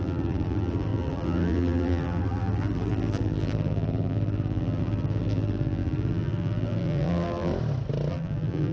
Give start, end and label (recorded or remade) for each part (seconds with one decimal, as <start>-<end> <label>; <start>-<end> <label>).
0.0-7.5 remade; 7.5-8.1 recorded; 8.1-8.7 remade